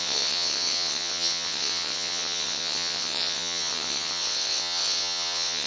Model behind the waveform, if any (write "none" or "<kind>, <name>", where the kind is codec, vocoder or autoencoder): vocoder, WaveNeXt